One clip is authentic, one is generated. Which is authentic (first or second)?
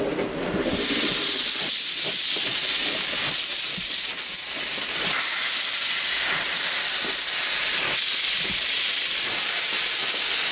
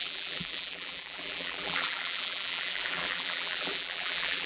first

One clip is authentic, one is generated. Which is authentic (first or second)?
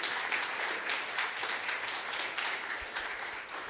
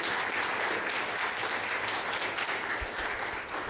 second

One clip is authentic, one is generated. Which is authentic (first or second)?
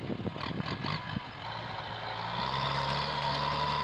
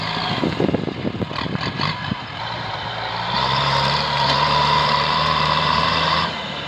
first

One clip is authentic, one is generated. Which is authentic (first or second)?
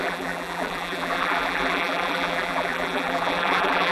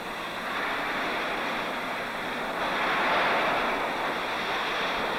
second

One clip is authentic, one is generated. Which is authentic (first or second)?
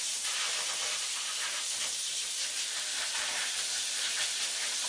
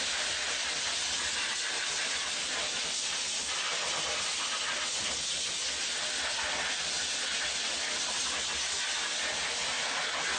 second